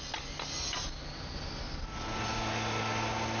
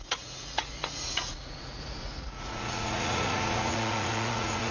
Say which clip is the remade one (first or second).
second